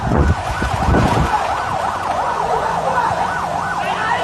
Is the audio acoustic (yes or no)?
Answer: no